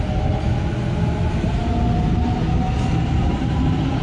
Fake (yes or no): no